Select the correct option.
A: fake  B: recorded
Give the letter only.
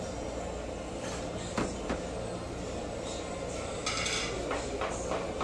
B